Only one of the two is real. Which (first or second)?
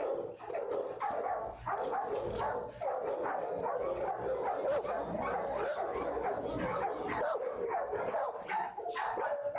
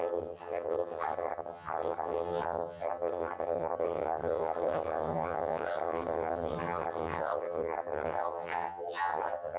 first